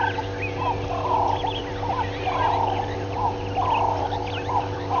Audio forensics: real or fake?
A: fake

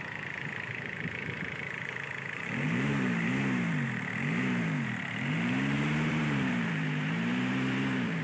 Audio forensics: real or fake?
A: fake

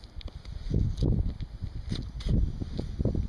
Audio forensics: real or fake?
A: real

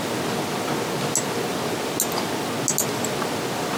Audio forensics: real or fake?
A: real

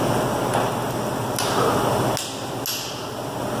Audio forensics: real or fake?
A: real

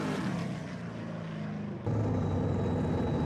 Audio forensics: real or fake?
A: real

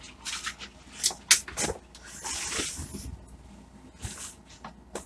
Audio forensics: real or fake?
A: real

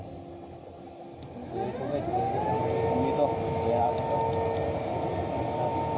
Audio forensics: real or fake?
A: real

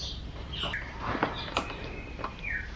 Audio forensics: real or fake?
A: fake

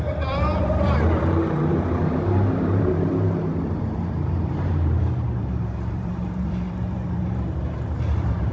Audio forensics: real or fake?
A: fake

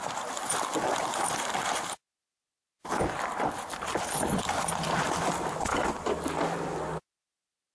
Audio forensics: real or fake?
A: real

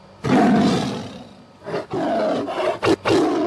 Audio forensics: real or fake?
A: real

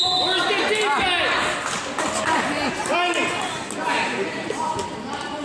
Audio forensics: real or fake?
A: real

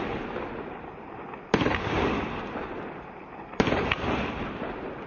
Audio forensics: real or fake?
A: real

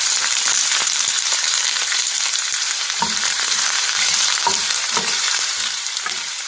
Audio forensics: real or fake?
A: fake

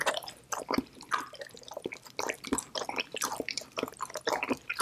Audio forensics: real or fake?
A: fake